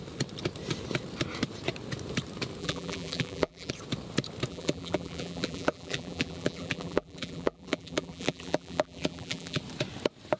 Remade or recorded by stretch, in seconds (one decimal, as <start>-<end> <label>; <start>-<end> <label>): 0.0-2.6 recorded; 2.6-3.7 remade; 3.7-4.5 recorded; 4.5-9.6 remade; 9.6-10.4 recorded